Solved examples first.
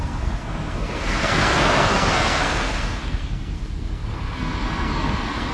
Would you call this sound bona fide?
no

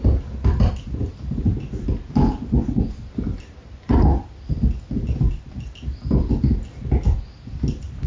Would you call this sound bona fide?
yes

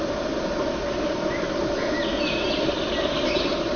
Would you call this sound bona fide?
yes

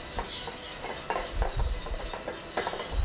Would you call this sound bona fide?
yes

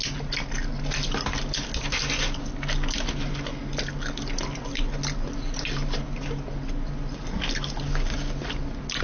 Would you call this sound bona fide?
yes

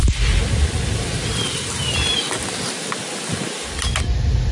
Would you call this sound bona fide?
yes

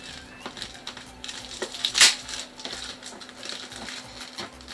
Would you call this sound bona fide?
yes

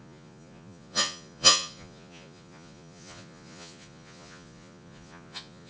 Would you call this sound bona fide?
no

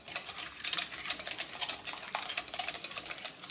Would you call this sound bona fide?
yes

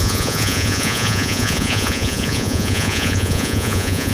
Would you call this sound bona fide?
no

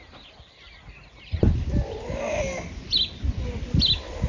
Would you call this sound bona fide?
yes